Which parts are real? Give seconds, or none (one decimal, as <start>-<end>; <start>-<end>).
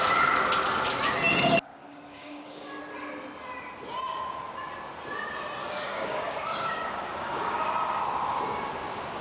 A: 0.0-1.7; 2.8-5.6; 8.0-9.2